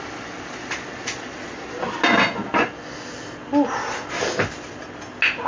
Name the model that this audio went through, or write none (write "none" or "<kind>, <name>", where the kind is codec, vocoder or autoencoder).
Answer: none